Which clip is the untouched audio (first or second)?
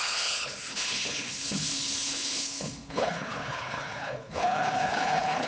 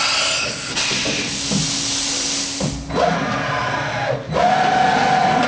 second